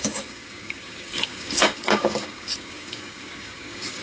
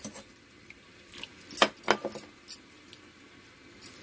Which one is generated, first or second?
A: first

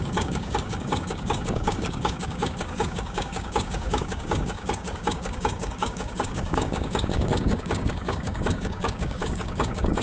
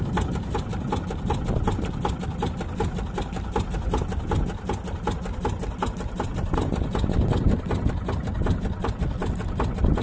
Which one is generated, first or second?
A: first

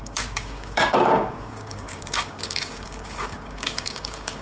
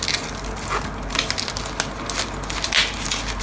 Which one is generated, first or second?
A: first